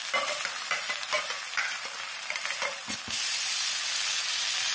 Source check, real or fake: real